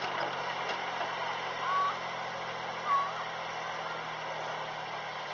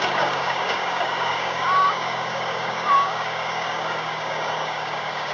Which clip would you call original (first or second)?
first